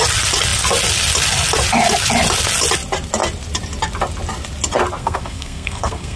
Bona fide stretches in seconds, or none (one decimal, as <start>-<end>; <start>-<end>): 0.0-5.0